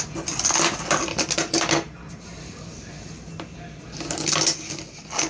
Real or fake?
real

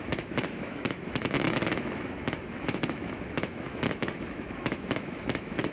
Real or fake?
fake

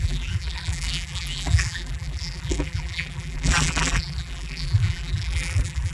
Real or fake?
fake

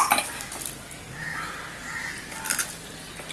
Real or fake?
real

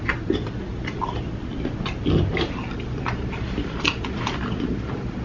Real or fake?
real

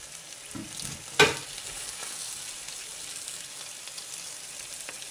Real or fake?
real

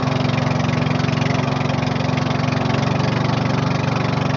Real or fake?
real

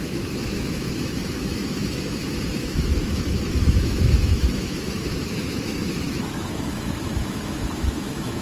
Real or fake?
fake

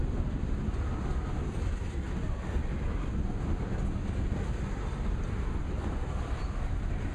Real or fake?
real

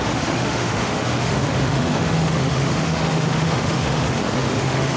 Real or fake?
fake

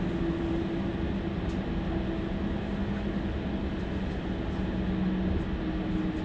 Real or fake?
real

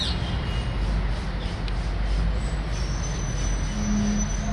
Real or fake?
real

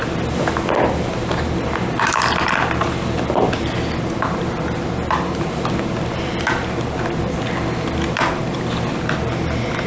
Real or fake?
real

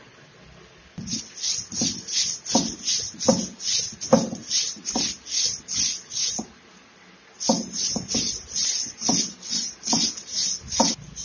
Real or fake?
real